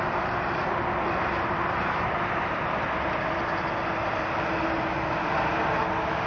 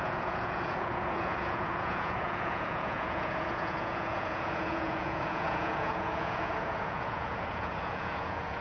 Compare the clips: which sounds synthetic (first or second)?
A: second